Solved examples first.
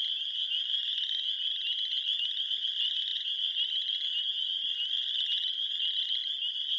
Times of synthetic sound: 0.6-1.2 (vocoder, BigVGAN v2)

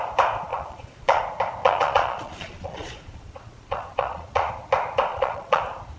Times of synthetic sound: 0.5-1.2 (vocoder, Vocos); 1.6-4.5; 5.1-5.6

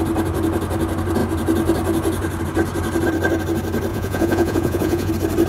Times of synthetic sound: 3.9-5.1 (vocoder, Vocos)

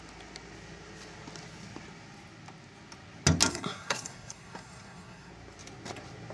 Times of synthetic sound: 3.5-5.3 (codec, SNAC)

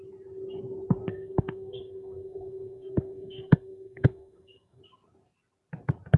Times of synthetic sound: 1.1-4.8 (codec, SNAC)

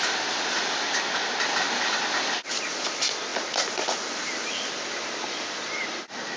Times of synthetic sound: none

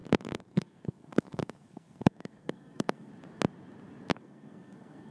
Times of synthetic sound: 0.0-3.1 (codec, SNAC); 4.1-5.1

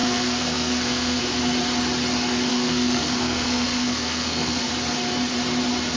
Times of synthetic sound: 0.0-1.2 (codec, SNAC); 2.5-4.7